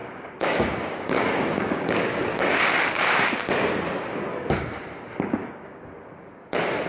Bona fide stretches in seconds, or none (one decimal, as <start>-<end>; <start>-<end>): 3.5-4.3; 4.8-5.4; 6.0-6.9